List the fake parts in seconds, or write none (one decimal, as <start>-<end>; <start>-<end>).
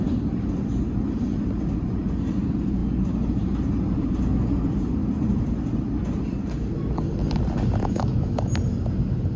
7.8-8.5